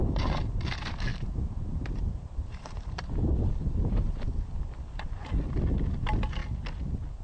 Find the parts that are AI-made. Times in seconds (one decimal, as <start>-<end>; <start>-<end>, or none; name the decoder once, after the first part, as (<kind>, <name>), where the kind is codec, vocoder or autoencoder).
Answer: 1.1-5.3 (vocoder, BigVGAN v2)